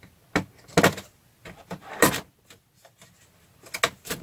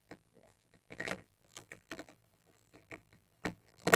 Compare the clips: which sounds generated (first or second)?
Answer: second